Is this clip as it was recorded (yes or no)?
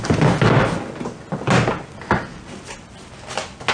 yes